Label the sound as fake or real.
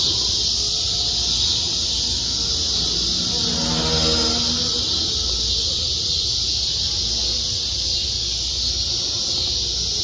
real